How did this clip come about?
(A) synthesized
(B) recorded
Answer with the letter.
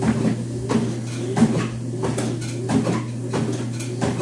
B